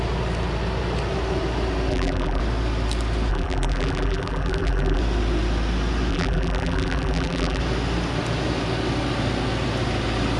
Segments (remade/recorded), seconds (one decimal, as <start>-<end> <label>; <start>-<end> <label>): 0.0-1.9 recorded; 1.9-2.4 remade; 2.4-3.3 recorded; 3.3-5.0 remade; 5.0-6.1 recorded; 6.1-7.6 remade; 7.6-10.4 recorded